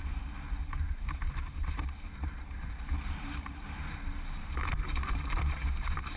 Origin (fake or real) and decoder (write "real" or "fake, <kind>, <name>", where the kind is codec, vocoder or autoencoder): fake, vocoder, BigVGAN v2